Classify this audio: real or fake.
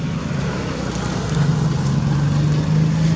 real